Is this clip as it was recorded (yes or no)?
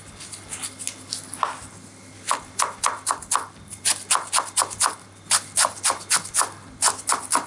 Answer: yes